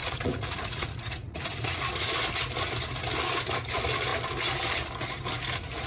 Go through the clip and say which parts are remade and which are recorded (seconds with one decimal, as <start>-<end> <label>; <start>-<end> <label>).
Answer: 0.0-2.1 remade; 2.1-5.9 recorded

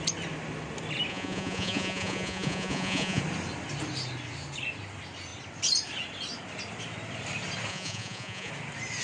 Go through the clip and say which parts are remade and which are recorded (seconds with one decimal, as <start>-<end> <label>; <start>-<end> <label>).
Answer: 0.0-1.1 recorded; 1.1-3.2 remade; 3.2-7.7 recorded; 7.7-8.5 remade; 8.5-9.0 recorded

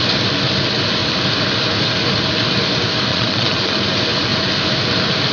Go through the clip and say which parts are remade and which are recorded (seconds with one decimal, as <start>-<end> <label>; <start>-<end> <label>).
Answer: 0.0-3.1 recorded; 3.1-3.7 remade; 3.7-5.3 recorded

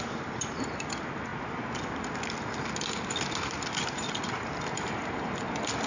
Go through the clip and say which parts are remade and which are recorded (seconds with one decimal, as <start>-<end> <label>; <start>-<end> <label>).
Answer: 0.0-5.9 recorded

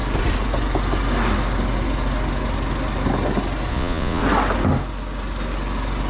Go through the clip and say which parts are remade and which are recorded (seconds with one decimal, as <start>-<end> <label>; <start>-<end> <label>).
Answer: 0.0-3.7 recorded; 3.7-4.2 remade; 4.2-6.1 recorded